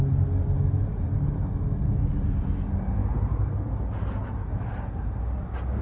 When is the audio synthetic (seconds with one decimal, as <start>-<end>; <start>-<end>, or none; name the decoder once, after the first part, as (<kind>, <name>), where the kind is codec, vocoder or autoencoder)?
none